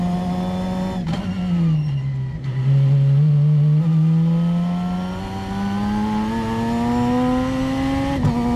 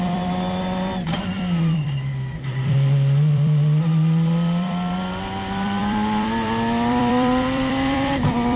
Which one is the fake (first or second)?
second